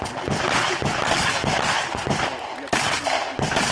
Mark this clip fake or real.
real